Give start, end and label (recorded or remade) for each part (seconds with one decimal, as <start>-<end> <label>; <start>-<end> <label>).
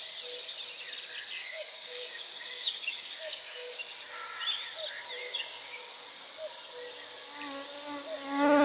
0.0-1.4 recorded; 1.4-3.8 remade; 3.8-5.2 recorded; 5.2-6.3 remade; 6.3-8.6 recorded